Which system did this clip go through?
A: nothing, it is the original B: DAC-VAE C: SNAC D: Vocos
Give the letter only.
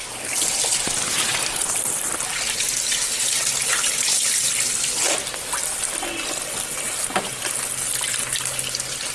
A